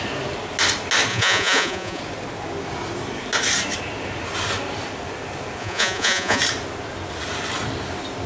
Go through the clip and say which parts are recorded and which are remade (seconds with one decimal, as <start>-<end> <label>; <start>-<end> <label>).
0.0-1.1 recorded; 1.1-2.0 remade; 2.0-5.6 recorded; 5.6-6.4 remade; 6.4-8.3 recorded